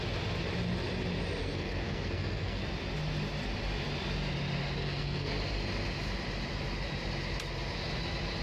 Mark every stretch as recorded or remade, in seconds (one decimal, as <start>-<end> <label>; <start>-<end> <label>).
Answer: 0.0-1.4 recorded; 1.4-2.6 remade; 2.6-4.8 recorded; 4.8-5.3 remade; 5.3-8.4 recorded